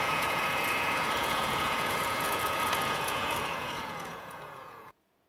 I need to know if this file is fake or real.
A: fake